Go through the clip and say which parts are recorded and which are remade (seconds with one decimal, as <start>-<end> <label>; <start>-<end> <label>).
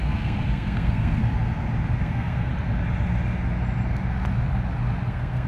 0.0-1.2 remade; 1.2-2.0 recorded; 2.0-2.5 remade; 2.5-5.1 recorded; 5.1-5.5 remade